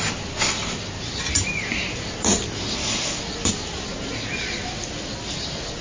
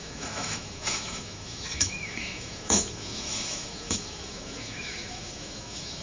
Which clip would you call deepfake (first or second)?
second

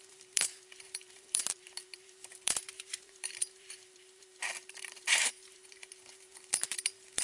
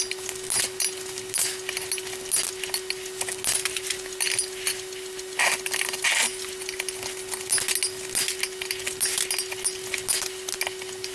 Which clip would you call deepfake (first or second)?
first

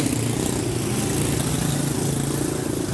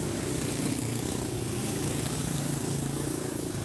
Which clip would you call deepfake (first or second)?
second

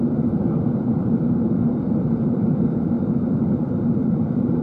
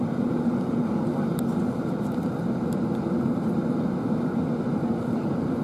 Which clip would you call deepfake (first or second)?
first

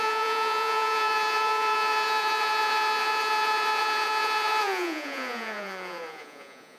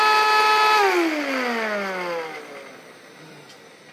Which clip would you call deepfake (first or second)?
first